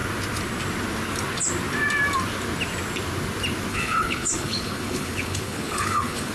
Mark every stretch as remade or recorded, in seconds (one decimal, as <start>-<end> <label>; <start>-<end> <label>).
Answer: 0.0-3.7 recorded; 3.7-6.3 remade